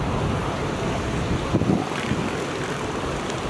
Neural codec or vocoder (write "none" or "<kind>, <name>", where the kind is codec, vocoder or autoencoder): none